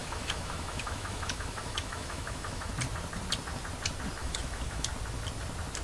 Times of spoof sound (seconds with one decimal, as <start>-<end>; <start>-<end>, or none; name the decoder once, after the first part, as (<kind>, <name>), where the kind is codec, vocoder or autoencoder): 0.0-2.7 (autoencoder, DAC-VAE); 4.2-4.9